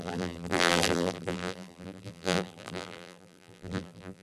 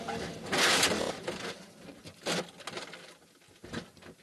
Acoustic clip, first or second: second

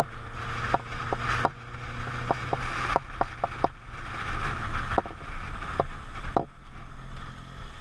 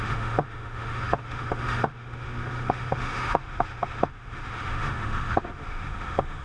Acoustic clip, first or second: first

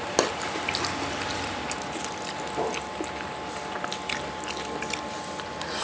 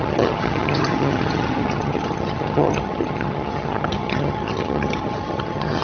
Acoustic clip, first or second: first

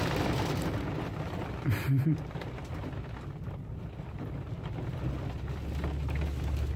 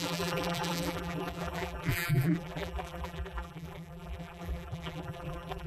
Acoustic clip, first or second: first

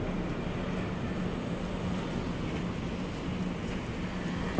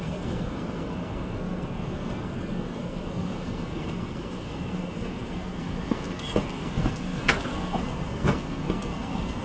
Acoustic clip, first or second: first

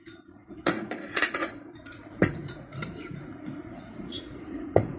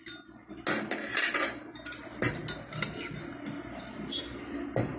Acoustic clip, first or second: second